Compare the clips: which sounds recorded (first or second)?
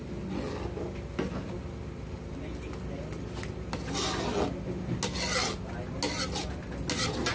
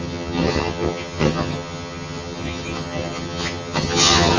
first